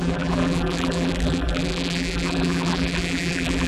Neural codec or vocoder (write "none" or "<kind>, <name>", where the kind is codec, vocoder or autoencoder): vocoder, BigVGAN v2